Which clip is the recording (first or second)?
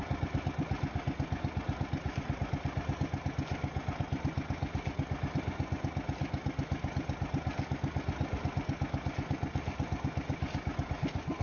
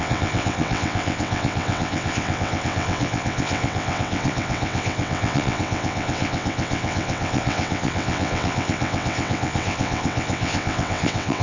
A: first